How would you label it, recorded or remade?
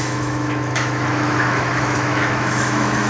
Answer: remade